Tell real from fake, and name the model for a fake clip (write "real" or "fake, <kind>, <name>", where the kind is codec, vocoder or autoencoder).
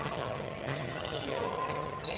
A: fake, vocoder, HiFi-GAN